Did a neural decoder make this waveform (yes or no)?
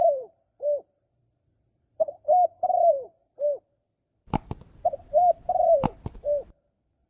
yes